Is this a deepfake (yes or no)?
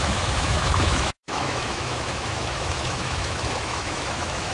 yes